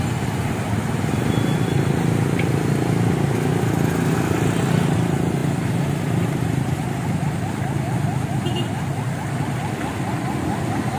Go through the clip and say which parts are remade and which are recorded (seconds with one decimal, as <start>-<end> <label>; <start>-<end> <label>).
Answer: 0.0-11.0 recorded